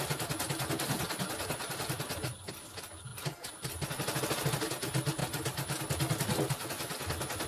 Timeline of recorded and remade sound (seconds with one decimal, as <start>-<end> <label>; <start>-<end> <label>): 0.0-5.2 recorded; 5.2-5.8 remade; 5.8-7.5 recorded